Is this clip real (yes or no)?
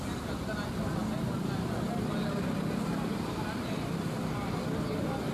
yes